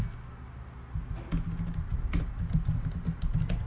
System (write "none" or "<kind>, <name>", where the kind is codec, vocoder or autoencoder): none